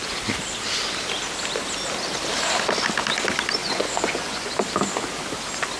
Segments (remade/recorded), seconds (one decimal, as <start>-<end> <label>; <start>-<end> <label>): 0.0-3.6 recorded; 3.6-4.5 remade; 4.5-5.8 recorded